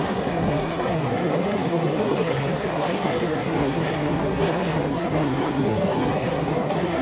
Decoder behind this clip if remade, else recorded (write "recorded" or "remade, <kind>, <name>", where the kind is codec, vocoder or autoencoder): remade, codec, SNAC